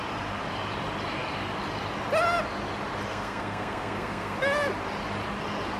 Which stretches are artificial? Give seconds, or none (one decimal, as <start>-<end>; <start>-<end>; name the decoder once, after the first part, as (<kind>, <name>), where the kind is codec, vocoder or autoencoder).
3.1-4.4 (codec, SNAC)